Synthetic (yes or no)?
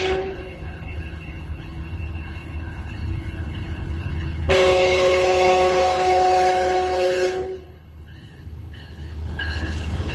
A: yes